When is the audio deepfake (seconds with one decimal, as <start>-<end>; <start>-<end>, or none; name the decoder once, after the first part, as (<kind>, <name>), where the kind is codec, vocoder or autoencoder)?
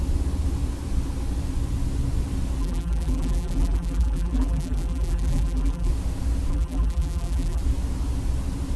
2.6-5.9 (vocoder, BigVGAN v2); 6.5-7.6